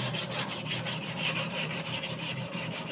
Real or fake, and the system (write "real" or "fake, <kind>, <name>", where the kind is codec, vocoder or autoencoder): fake, vocoder, BigVGAN v2